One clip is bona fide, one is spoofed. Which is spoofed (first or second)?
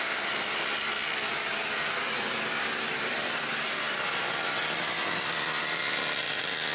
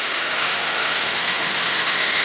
second